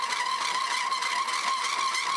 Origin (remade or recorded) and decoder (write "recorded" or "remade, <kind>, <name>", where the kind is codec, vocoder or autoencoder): recorded